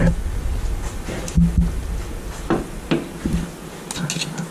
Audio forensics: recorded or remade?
recorded